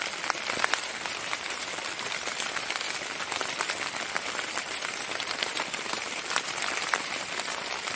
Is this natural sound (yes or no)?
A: no